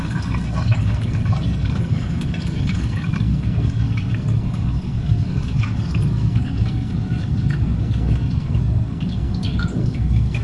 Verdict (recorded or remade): remade